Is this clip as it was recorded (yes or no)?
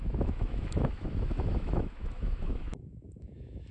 no